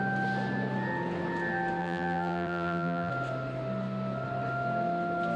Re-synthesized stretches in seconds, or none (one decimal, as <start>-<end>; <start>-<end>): 1.8-3.1